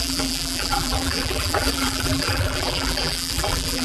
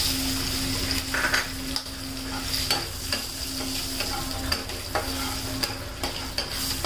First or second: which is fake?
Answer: first